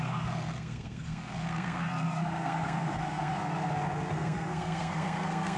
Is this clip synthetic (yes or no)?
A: yes